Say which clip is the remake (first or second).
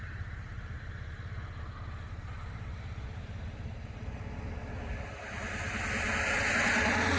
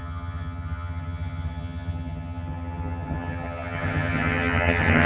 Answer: second